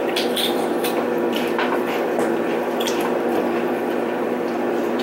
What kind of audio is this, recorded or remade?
remade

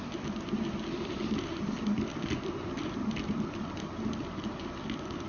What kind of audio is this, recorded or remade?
recorded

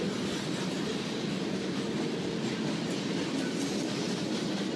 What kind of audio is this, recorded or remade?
recorded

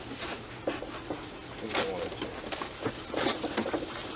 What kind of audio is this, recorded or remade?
recorded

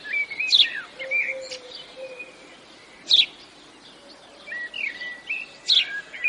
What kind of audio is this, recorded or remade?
recorded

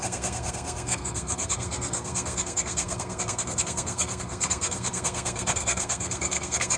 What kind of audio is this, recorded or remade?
remade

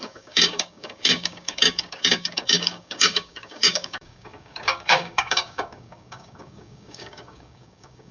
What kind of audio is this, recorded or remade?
remade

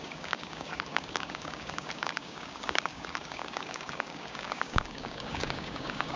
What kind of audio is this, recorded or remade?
remade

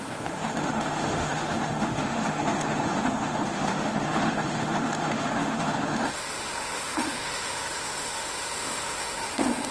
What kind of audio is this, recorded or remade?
remade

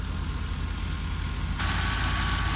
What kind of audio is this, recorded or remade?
recorded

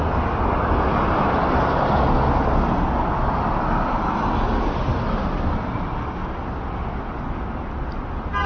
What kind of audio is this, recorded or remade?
recorded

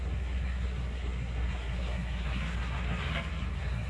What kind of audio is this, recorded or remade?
remade